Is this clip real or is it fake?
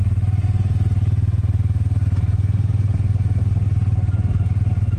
real